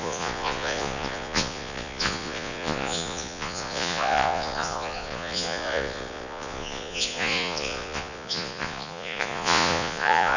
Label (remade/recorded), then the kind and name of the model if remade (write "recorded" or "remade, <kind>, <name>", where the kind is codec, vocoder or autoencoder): remade, vocoder, Vocos